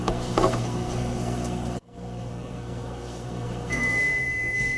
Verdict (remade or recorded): remade